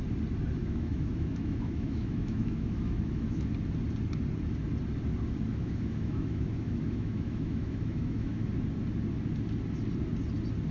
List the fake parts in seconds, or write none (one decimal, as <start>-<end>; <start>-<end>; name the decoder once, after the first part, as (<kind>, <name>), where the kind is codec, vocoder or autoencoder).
0.6-3.5 (autoencoder, DAC-VAE); 5.5-8.5